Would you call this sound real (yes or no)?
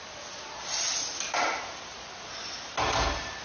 yes